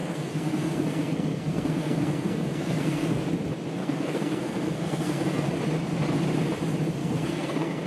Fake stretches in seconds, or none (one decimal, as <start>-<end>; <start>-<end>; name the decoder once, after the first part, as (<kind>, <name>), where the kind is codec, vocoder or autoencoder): 0.0-3.2 (codec, SNAC); 3.8-5.5; 7.0-7.9